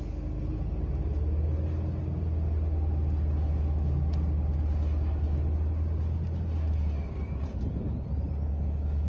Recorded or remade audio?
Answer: recorded